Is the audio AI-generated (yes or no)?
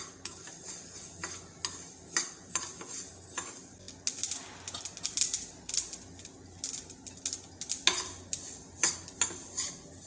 no